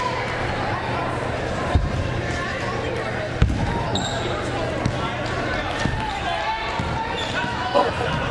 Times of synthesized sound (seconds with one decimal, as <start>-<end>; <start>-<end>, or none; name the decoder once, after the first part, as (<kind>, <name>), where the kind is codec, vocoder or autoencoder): none